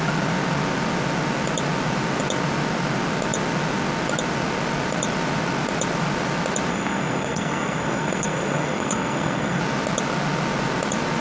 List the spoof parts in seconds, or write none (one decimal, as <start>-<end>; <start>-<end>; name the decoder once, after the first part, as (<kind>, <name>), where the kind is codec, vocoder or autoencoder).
6.7-9.6 (codec, SNAC)